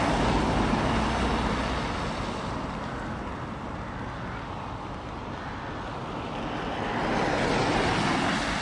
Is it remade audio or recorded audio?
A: recorded